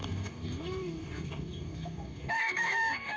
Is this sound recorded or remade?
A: remade